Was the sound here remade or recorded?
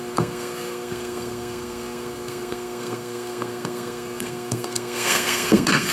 remade